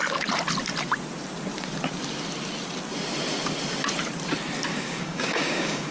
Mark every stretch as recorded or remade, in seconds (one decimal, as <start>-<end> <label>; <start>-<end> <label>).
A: 0.0-4.7 recorded; 4.7-5.9 remade